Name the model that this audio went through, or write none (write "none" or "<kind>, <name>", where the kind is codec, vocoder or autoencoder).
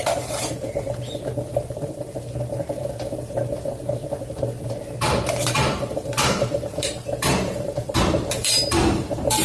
vocoder, BigVGAN v2